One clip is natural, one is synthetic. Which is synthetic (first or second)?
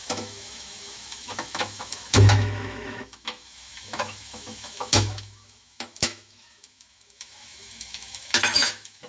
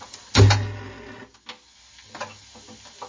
first